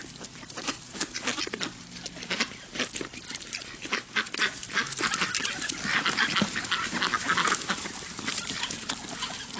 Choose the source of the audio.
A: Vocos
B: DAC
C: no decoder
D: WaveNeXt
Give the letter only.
C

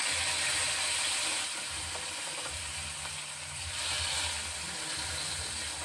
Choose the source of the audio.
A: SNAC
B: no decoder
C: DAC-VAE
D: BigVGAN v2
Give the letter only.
B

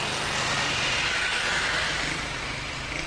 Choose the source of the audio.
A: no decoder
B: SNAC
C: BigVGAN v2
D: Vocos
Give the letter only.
A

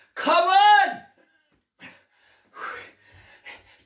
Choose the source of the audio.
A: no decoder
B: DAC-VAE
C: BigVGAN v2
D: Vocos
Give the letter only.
A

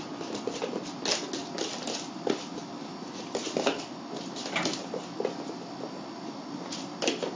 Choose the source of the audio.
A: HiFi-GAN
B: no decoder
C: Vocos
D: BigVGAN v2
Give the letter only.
B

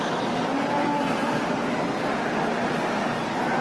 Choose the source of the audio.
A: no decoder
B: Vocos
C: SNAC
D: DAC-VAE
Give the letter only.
A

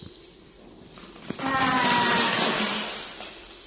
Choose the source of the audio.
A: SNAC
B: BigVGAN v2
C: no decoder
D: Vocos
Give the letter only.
C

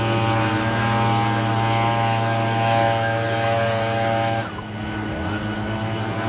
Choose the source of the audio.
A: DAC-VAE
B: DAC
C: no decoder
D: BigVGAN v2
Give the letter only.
C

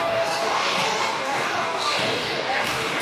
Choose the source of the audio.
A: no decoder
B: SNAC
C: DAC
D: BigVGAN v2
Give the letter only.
C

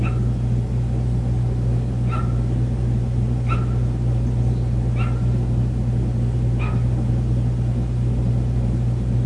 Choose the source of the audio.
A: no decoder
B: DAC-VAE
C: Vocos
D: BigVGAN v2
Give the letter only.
A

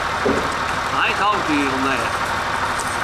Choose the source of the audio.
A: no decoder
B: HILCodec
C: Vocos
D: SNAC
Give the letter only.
A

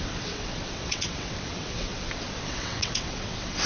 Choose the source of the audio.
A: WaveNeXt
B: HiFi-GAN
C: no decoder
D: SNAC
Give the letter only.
A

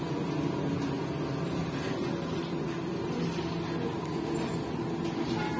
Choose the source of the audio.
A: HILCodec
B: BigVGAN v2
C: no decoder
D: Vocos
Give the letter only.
C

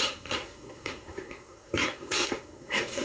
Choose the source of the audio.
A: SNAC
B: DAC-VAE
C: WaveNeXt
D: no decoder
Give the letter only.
A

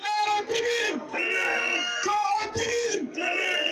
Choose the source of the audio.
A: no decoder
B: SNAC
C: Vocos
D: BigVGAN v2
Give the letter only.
B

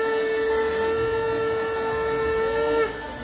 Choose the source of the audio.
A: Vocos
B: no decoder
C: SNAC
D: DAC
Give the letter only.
B